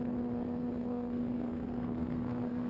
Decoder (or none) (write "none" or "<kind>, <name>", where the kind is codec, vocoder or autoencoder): codec, SNAC